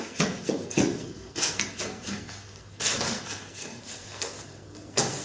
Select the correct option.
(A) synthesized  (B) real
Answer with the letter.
A